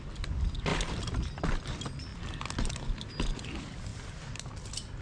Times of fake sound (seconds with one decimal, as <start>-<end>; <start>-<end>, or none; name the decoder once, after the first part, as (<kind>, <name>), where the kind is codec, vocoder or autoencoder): none